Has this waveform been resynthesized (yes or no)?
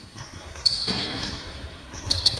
yes